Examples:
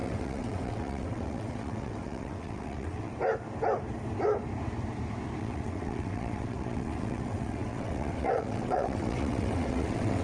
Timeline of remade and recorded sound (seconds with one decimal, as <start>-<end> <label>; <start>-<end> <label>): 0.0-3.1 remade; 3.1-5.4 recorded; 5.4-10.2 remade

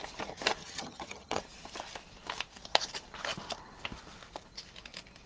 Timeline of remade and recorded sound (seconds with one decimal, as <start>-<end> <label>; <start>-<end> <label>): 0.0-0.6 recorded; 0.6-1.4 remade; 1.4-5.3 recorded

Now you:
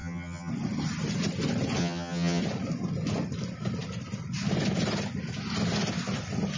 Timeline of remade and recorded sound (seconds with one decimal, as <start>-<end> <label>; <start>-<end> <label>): 0.0-0.5 remade; 0.5-1.8 recorded; 1.8-2.4 remade; 2.4-6.6 recorded

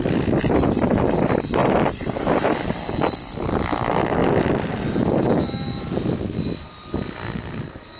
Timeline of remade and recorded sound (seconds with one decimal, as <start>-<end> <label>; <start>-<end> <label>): 0.0-8.0 recorded

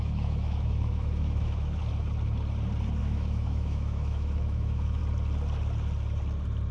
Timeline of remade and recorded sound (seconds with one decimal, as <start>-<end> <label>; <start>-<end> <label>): 0.0-1.8 remade; 1.8-3.0 recorded; 3.0-5.0 remade; 5.0-6.7 recorded

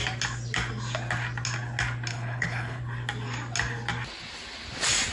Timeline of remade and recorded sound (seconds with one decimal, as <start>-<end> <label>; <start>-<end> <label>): 0.0-2.1 recorded; 2.1-2.8 remade; 2.8-5.1 recorded

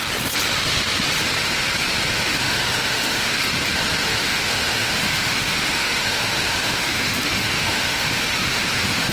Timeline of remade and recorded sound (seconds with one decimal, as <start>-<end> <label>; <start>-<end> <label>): 0.0-2.1 recorded; 2.1-3.4 remade; 3.4-4.0 recorded; 4.0-9.1 remade